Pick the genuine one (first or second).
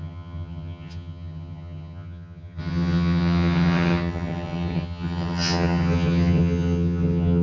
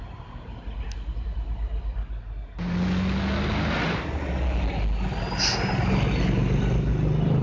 second